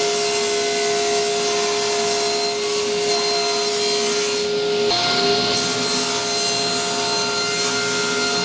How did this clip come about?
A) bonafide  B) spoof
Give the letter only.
A